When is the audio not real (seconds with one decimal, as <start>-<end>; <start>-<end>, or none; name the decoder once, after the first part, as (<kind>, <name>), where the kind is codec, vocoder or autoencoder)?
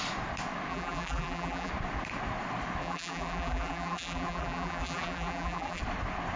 0.7-1.7 (vocoder, BigVGAN v2); 2.8-5.8